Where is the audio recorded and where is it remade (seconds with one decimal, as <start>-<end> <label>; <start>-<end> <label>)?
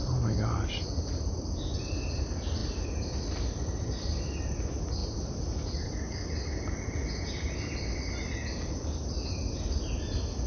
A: 0.0-10.5 recorded